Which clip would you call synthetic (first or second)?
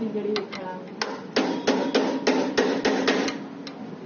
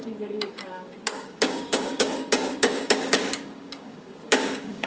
second